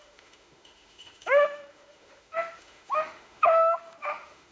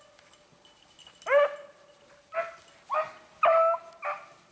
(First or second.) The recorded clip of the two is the second